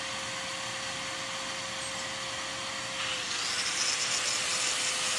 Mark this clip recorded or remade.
recorded